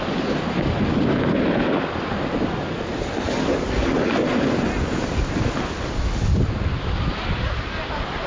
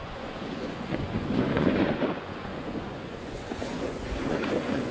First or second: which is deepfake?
second